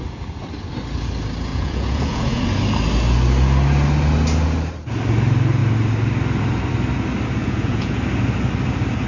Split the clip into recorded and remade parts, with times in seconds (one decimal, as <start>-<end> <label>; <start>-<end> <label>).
0.0-1.5 recorded; 1.5-2.4 remade; 2.4-7.4 recorded; 7.4-7.9 remade; 7.9-9.1 recorded